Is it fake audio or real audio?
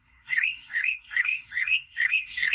fake